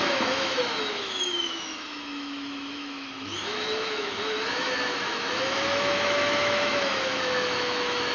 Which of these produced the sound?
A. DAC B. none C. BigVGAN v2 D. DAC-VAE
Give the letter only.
D